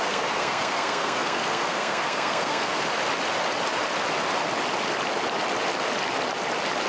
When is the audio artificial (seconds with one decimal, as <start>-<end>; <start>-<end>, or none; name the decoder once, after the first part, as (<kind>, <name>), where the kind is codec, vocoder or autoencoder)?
0.0-2.7 (codec, SNAC)